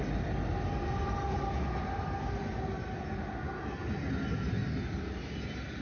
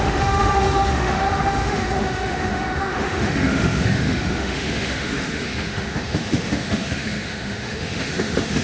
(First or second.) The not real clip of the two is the second